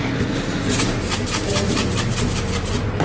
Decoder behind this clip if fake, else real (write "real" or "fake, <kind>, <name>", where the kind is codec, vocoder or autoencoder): real